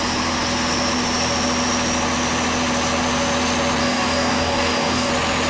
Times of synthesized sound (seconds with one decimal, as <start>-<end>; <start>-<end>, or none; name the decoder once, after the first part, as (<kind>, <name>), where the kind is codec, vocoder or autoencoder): 3.8-5.1 (codec, DAC)

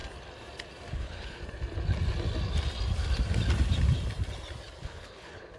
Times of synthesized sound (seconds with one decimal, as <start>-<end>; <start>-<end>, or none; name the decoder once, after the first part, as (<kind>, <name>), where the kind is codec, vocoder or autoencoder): 0.9-1.4 (codec, HILCodec); 4.8-5.6

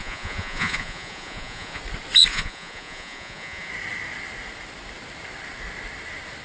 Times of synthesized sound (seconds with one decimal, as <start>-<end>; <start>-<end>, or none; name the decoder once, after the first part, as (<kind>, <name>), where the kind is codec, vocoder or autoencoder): 0.0-1.8 (vocoder, Vocos); 2.3-3.7

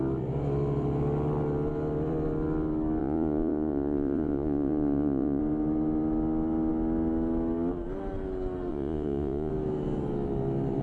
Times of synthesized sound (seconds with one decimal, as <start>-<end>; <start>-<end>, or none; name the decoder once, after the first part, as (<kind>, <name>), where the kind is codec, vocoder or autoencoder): 3.0-5.4 (vocoder, Vocos); 8.7-9.5

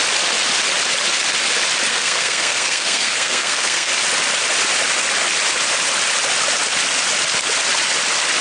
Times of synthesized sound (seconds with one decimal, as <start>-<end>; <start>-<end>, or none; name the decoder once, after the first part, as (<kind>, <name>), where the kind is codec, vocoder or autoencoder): 1.9-3.9 (codec, SNAC)